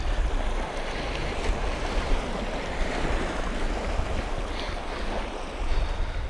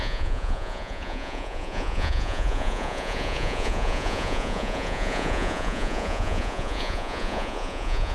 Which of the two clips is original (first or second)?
first